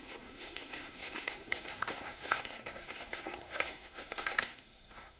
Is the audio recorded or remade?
remade